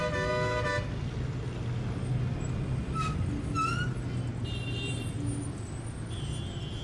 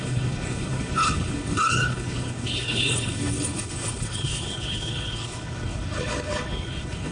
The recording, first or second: first